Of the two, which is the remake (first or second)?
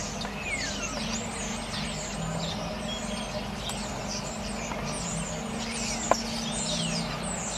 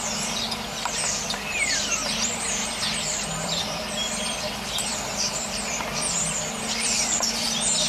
second